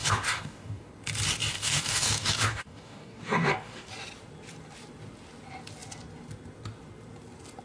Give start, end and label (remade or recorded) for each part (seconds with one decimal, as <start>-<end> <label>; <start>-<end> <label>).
0.0-0.9 remade; 0.9-1.5 recorded; 1.5-3.9 remade; 3.9-7.6 recorded